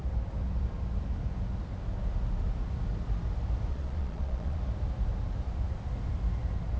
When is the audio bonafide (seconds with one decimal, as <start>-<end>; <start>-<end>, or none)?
0.0-3.7; 4.6-6.8